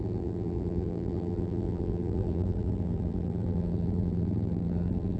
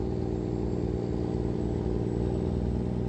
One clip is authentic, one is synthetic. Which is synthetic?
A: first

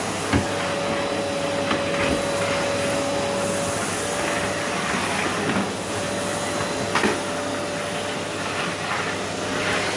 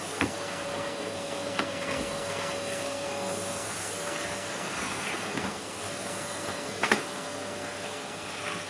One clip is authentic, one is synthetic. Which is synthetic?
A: second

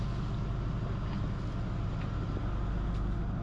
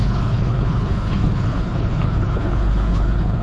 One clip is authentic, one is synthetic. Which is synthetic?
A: second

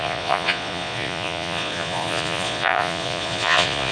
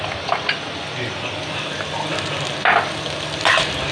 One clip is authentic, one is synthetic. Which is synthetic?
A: first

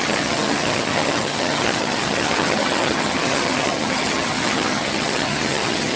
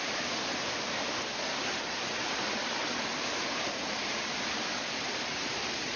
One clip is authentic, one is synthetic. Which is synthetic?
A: first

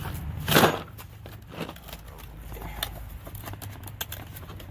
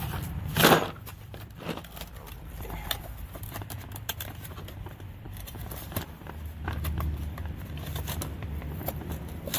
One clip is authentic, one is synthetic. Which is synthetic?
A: second